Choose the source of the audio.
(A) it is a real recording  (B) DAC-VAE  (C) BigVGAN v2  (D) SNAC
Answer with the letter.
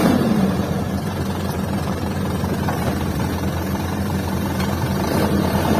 C